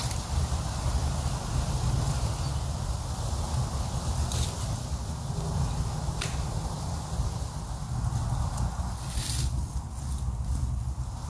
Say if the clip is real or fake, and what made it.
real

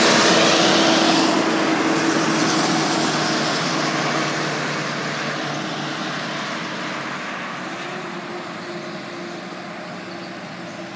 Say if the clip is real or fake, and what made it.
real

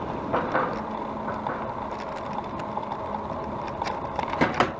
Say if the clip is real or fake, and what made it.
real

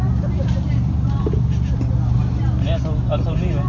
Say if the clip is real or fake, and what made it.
real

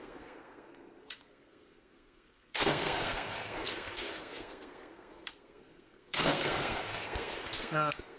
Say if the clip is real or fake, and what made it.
fake, codec, SNAC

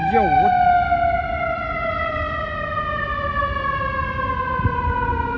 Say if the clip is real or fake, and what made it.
real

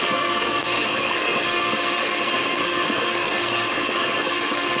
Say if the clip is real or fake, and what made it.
fake, codec, SNAC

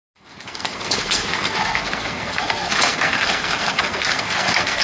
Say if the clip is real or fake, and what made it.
fake, codec, SNAC